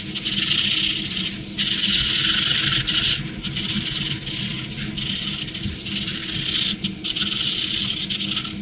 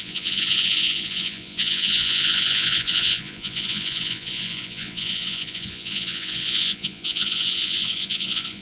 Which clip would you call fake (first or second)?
second